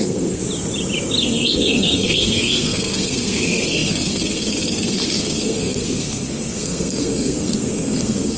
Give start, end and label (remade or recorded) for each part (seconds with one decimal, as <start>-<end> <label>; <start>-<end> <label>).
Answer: 0.0-0.4 remade; 0.4-1.2 recorded; 1.2-8.4 remade